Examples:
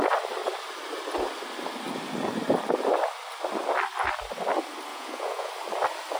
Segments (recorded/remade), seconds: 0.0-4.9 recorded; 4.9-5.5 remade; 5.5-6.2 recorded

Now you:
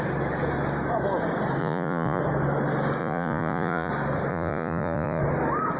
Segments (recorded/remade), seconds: 0.0-1.6 recorded; 1.6-2.2 remade; 2.2-3.0 recorded; 3.0-3.9 remade; 3.9-4.3 recorded; 4.3-5.2 remade; 5.2-5.8 recorded